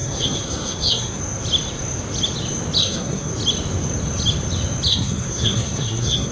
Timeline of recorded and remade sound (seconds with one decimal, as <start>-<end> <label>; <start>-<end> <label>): 0.0-1.2 remade; 1.2-2.8 recorded; 2.8-3.3 remade; 3.3-4.9 recorded; 4.9-6.3 remade